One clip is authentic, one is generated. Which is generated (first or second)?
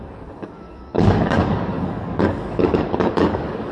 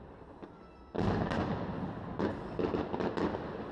first